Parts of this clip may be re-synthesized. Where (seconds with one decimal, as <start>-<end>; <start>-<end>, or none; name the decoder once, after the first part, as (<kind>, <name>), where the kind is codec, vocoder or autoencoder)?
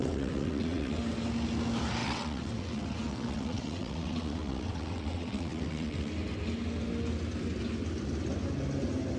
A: 0.0-1.0 (vocoder, WaveNeXt); 2.0-6.1